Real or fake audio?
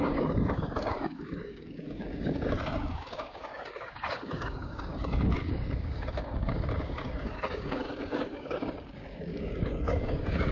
fake